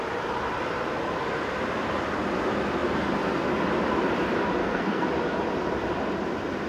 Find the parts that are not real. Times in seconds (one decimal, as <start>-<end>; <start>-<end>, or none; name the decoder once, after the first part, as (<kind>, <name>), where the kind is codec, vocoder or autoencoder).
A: 4.6-5.1 (codec, SNAC)